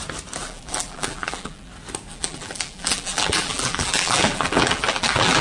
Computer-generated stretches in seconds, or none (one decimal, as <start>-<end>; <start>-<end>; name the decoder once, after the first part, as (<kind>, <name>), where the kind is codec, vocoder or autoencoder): 0.4-1.7 (vocoder, BigVGAN v2); 2.1-5.4